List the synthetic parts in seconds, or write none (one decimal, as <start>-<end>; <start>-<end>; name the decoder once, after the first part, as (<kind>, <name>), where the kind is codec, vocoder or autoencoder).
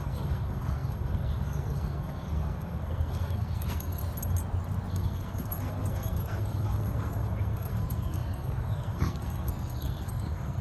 0.0-4.0 (codec, SNAC); 4.9-10.6